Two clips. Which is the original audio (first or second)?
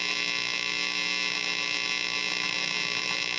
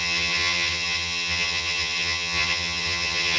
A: first